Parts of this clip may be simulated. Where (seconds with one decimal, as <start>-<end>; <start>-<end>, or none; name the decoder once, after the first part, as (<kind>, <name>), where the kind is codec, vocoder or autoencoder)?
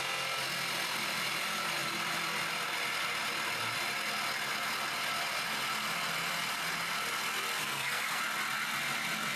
7.6-8.2 (codec, SNAC)